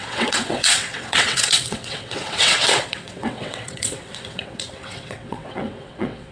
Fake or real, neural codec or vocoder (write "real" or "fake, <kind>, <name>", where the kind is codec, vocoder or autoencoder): fake, vocoder, WaveNeXt